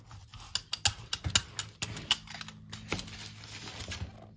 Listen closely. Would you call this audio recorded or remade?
recorded